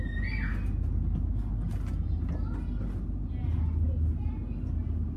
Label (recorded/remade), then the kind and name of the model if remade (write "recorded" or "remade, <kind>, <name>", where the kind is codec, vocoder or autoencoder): recorded